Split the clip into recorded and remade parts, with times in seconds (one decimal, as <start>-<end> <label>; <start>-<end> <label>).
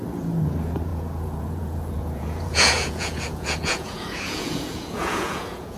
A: 0.0-5.8 remade